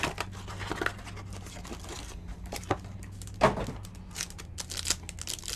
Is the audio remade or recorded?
recorded